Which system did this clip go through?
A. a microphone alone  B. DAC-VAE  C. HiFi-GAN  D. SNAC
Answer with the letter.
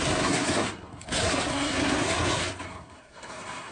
D